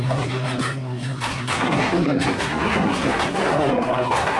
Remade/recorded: remade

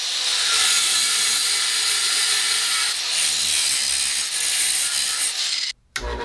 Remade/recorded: recorded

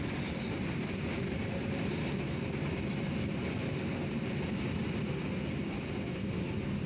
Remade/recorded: recorded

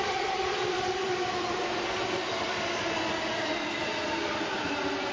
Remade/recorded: remade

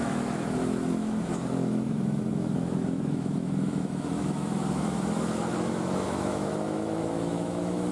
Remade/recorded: remade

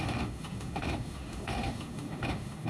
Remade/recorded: remade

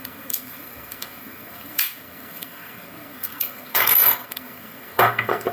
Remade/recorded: remade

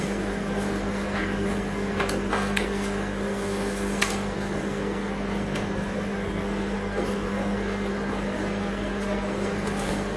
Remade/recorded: remade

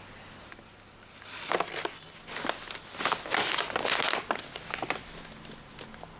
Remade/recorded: recorded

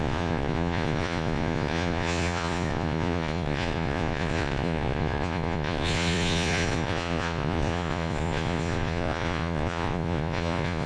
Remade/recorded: remade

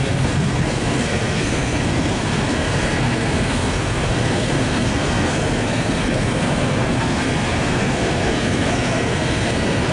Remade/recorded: remade